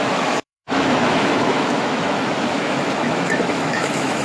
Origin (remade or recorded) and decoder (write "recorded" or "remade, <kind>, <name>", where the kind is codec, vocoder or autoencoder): remade, autoencoder, DAC-VAE